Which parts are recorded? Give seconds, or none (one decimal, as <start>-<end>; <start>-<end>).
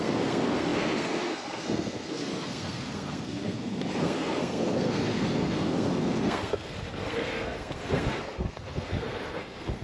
none